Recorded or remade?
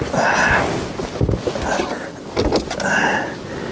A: recorded